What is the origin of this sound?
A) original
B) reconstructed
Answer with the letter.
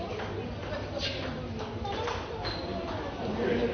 A